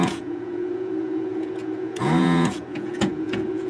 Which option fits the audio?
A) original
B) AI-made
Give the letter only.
B